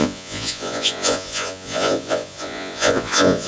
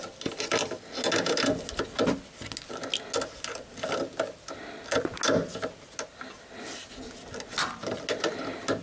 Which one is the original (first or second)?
second